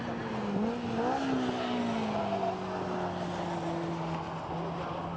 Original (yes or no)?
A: yes